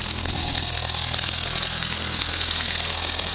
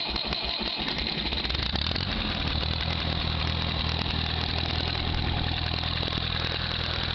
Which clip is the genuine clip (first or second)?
second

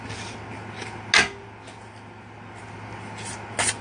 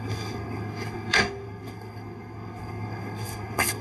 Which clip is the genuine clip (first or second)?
first